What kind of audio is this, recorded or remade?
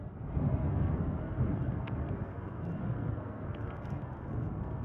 remade